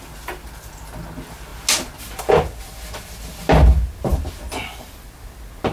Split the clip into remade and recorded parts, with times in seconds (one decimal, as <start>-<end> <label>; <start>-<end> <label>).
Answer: 0.0-5.7 recorded